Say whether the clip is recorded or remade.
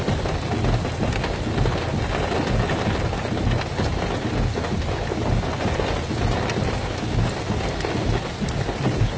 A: recorded